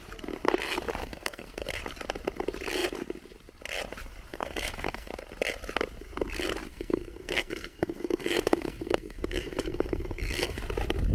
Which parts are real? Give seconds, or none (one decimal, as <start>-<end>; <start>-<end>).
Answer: 0.0-1.0; 1.7-4.3; 5.1-6.7; 10.6-11.1